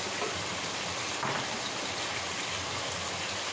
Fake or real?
real